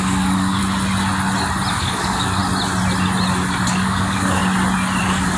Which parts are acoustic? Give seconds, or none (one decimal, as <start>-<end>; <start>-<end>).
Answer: 0.6-1.7; 2.4-3.7; 4.4-5.0